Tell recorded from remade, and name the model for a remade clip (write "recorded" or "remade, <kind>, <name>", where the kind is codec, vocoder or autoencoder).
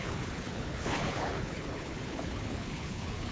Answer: remade, codec, HILCodec